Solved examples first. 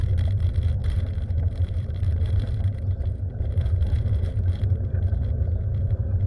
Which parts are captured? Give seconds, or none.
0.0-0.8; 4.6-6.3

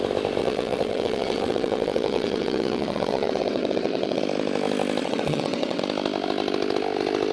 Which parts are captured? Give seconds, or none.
0.0-0.4; 4.2-5.0; 5.8-7.3

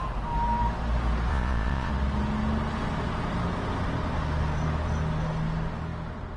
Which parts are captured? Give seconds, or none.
0.0-1.3; 1.9-6.4

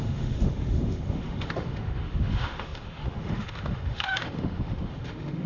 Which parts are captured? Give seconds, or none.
none

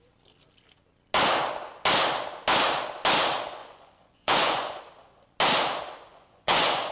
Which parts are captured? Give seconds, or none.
0.0-3.6; 4.8-6.1

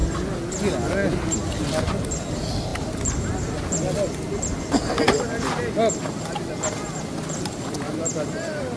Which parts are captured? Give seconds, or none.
0.0-8.8

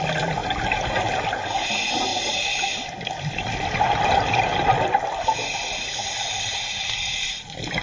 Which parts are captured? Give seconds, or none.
0.0-2.1; 2.9-7.8